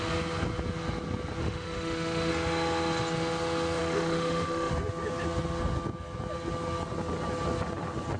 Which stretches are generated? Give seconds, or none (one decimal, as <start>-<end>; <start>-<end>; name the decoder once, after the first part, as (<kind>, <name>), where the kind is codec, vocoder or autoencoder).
1.4-2.3 (autoencoder, DAC-VAE); 3.8-4.7